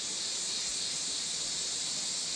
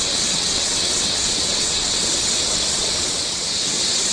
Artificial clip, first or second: second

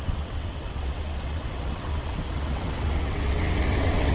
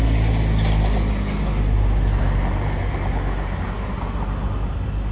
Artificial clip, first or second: first